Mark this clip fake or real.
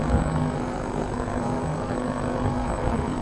fake